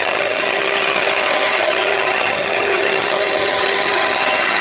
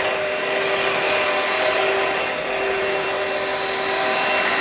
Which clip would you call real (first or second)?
second